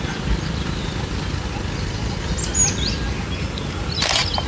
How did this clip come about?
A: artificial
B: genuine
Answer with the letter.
B